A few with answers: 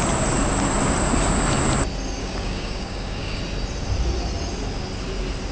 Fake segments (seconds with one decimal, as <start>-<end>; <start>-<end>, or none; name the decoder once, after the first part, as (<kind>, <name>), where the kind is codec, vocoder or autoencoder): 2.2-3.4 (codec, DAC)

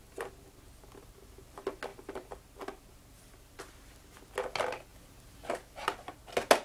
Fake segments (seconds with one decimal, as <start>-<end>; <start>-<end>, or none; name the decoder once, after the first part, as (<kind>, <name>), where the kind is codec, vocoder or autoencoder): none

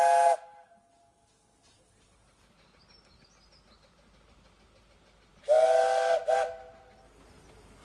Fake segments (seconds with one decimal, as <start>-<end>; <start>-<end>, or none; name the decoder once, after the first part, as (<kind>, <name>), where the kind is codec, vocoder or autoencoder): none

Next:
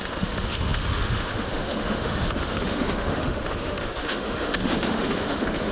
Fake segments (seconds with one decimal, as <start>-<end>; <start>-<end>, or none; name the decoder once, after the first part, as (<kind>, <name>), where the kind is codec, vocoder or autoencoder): 0.0-5.7 (autoencoder, DAC-VAE)

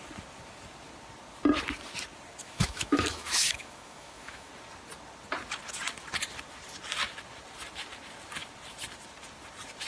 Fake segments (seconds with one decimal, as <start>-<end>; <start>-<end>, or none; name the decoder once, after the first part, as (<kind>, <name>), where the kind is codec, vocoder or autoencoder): 2.4-4.5 (autoencoder, DAC-VAE)

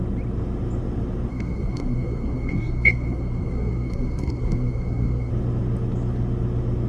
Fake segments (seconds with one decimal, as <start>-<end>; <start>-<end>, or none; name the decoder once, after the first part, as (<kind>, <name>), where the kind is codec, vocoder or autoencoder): 1.3-5.3 (codec, SNAC)

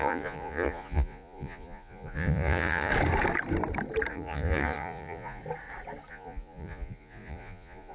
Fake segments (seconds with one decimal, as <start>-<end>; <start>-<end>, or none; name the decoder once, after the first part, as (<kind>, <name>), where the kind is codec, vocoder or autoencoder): 0.0-2.9 (vocoder, Vocos); 4.1-5.4; 6.1-7.9

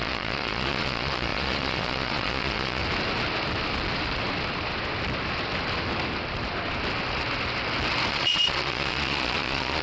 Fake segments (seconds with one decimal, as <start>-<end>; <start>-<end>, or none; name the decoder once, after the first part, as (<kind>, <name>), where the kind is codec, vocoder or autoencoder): 0.0-2.8 (vocoder, Vocos); 8.1-9.8